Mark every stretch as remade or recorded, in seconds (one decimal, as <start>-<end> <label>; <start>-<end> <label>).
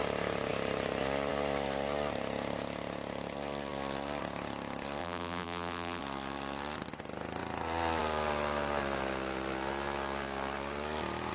0.0-5.0 recorded; 5.0-6.0 remade; 6.0-11.3 recorded